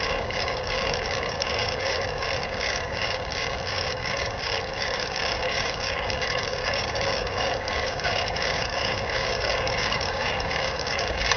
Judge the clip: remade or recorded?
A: remade